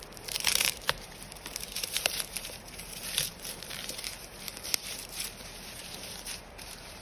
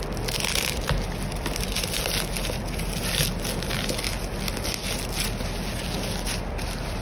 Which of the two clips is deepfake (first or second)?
first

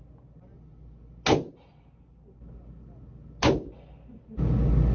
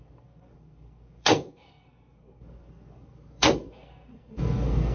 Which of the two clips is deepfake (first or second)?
second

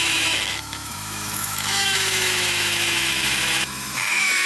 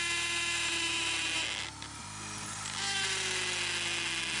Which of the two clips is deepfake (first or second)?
first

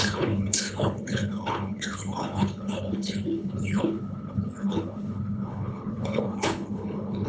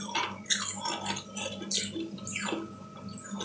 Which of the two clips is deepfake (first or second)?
first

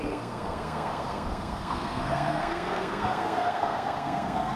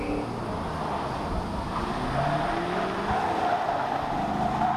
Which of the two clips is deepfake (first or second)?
first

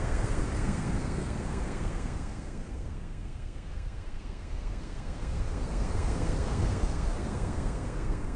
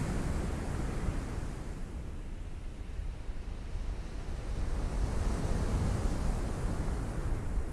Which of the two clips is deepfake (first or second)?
first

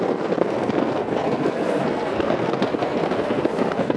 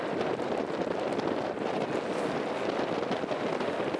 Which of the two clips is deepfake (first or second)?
first